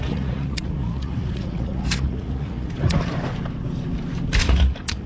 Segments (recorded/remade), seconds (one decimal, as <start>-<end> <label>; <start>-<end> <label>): 0.0-3.1 remade; 3.1-4.4 recorded; 4.4-5.1 remade